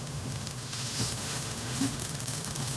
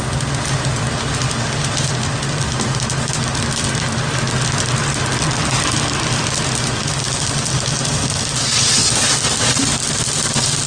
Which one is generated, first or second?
first